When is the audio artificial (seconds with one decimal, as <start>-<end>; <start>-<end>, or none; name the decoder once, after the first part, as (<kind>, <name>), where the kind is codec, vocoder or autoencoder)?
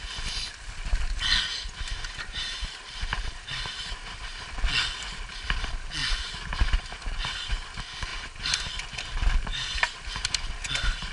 1.9-4.4 (vocoder, BigVGAN v2); 6.0-7.5; 8.1-8.7; 9.5-10.5